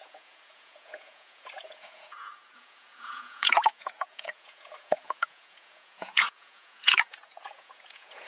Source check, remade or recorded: remade